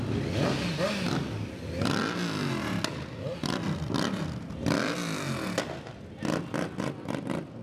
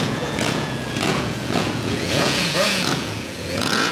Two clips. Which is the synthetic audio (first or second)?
second